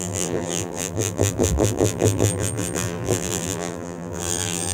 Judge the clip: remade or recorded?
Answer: remade